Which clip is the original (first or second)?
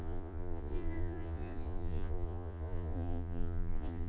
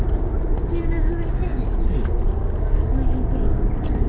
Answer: second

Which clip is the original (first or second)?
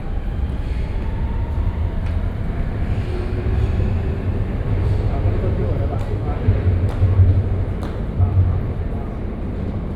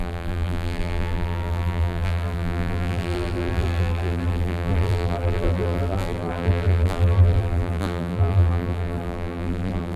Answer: first